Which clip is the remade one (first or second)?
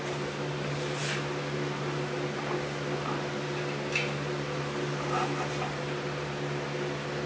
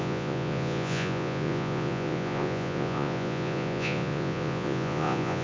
second